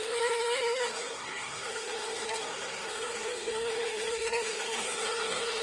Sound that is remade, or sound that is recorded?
remade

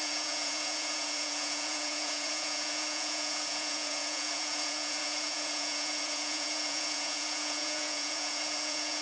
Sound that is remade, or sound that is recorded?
remade